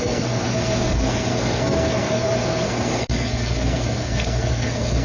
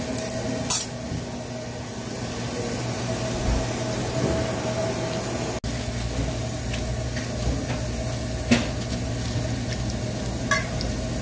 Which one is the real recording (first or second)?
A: second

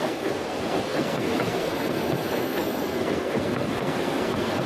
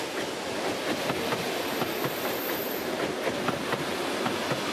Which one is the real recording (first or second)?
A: second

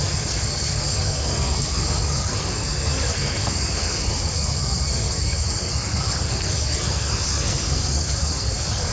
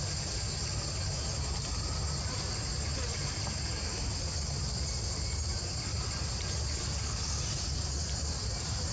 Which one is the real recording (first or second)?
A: second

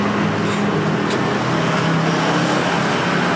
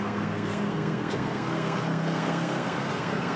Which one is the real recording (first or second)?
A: first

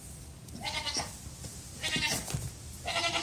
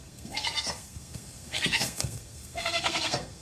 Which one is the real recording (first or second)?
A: first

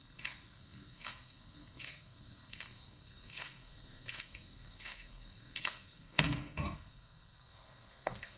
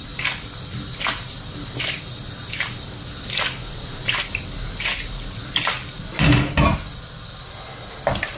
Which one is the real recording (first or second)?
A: second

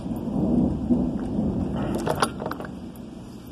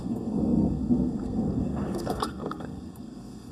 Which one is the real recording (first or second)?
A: first